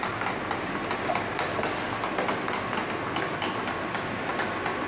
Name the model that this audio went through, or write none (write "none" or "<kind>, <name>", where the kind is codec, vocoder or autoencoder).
none